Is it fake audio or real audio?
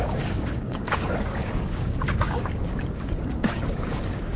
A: fake